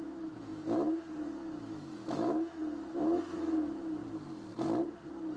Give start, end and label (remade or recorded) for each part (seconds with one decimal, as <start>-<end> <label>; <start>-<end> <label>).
0.0-4.0 remade; 4.0-5.4 recorded